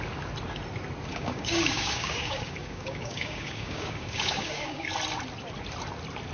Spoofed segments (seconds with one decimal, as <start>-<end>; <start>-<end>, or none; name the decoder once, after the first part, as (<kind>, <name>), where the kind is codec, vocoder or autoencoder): 1.1-4.9 (codec, DAC)